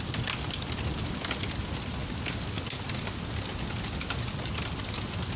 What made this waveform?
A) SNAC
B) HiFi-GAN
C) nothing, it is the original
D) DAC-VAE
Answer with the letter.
C